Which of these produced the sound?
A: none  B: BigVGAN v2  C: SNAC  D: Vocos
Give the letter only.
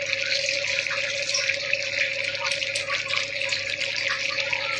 A